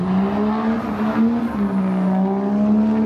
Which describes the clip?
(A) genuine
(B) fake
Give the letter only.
A